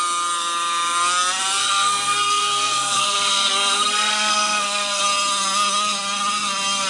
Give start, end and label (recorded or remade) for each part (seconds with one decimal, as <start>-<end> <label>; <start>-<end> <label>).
0.0-1.6 recorded; 1.6-5.0 remade; 5.0-6.9 recorded